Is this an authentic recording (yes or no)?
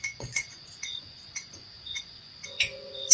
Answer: no